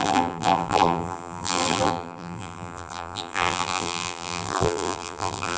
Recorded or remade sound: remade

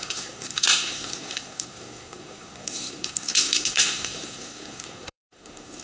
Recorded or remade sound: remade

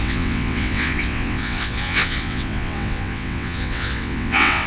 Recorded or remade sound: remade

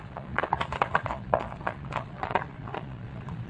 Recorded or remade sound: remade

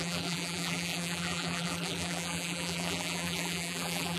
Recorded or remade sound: remade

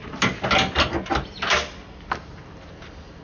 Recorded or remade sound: recorded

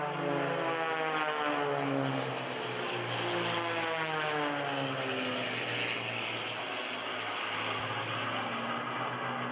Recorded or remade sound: recorded